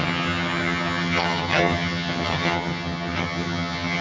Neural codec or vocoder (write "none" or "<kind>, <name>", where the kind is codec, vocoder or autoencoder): vocoder, HiFi-GAN